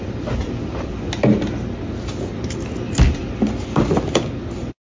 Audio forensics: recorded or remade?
recorded